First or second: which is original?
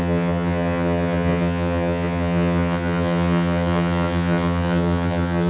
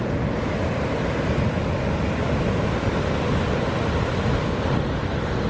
second